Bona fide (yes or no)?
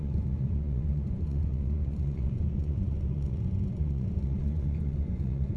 no